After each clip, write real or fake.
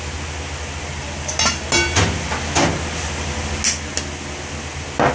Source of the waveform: real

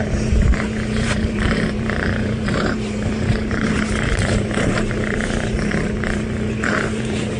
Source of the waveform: fake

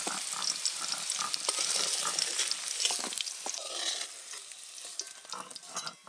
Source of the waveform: real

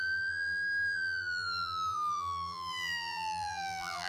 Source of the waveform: fake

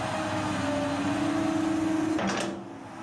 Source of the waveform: real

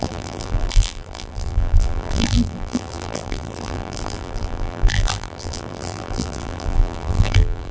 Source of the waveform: fake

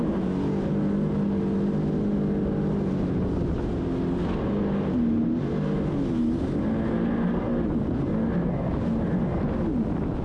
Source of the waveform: real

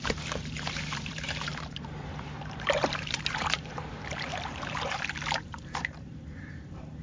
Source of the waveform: fake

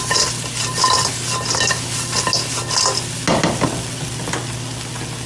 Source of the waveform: real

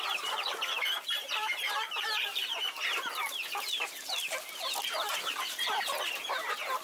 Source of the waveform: fake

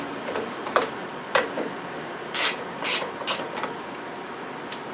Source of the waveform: fake